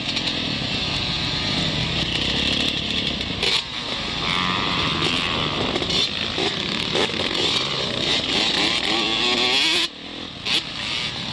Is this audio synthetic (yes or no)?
no